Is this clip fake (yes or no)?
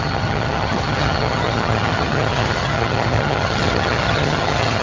yes